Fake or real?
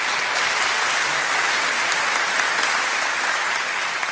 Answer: real